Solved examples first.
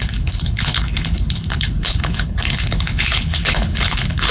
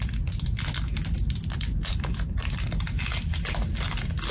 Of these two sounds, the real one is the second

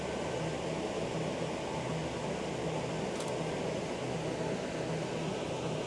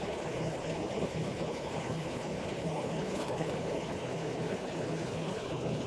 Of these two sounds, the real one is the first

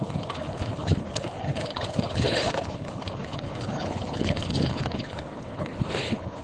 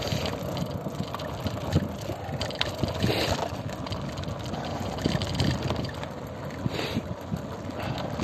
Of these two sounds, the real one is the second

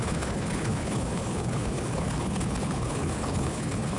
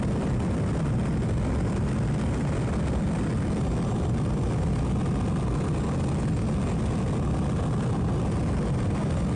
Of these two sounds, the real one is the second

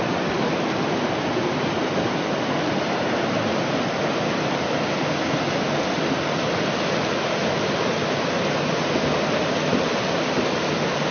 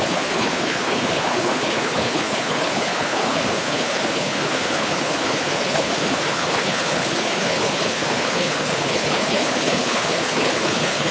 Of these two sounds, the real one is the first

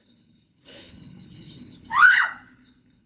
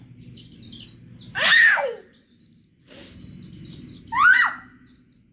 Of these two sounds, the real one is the second